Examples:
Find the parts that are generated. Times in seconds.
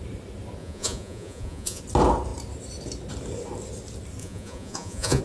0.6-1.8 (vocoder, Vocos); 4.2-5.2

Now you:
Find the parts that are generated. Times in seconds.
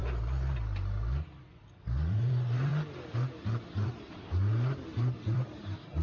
1.4-2.7 (vocoder, BigVGAN v2); 3.6-6.0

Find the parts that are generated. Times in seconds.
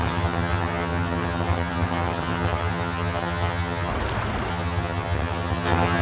0.0-3.9 (vocoder, HiFi-GAN); 4.5-6.0